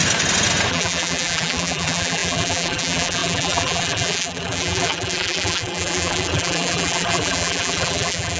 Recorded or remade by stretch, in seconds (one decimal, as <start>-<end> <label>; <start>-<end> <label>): 0.0-0.7 recorded; 0.7-8.4 remade